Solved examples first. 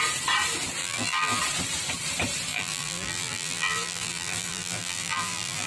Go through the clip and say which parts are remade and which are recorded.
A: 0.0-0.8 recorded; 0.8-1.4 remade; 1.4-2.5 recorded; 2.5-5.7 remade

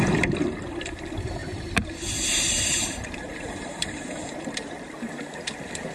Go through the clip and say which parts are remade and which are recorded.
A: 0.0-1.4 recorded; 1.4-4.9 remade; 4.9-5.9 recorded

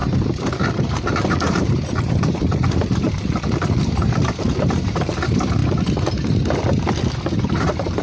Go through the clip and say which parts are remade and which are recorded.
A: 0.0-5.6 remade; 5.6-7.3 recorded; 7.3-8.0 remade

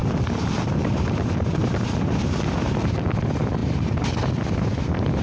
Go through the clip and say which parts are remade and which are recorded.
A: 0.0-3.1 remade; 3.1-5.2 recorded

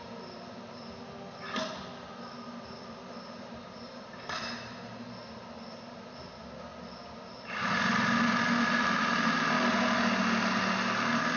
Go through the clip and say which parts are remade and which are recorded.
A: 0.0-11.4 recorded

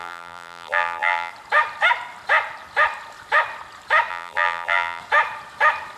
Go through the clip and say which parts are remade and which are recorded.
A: 0.0-1.3 remade; 1.3-4.1 recorded; 4.1-5.0 remade; 5.0-6.0 recorded